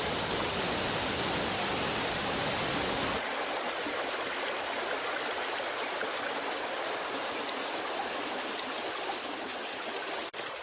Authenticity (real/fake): real